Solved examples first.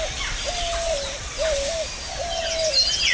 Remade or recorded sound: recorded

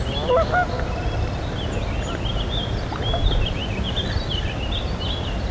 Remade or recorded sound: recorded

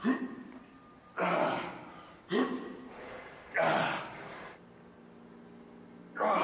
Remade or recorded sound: recorded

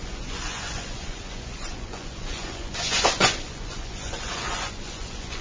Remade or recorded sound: remade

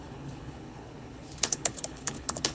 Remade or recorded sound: remade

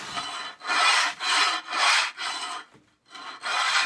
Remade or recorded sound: recorded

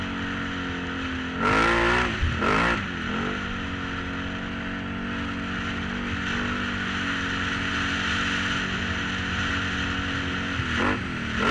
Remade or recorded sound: recorded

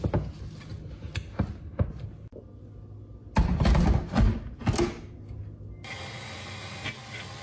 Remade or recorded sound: recorded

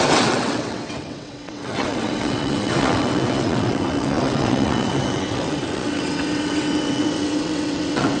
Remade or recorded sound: remade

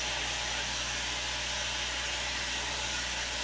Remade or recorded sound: recorded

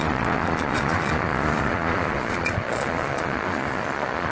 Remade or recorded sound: remade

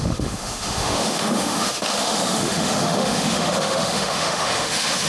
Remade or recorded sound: remade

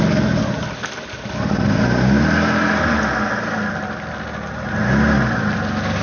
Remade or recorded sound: recorded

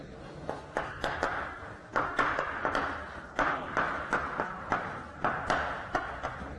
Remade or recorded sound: recorded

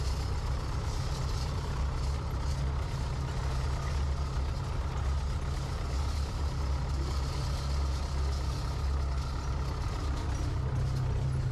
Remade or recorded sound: recorded